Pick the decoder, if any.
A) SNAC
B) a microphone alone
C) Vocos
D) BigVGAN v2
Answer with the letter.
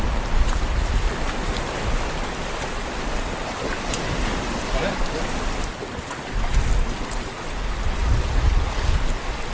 B